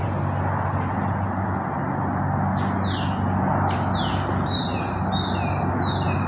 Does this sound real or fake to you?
real